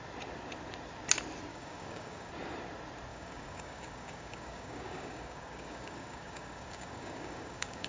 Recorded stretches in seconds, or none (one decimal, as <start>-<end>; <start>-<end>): 0.0-1.5; 2.3-3.1